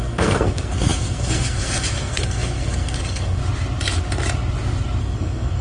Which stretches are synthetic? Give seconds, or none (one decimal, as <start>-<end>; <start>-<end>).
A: 0.0-3.4; 5.0-5.6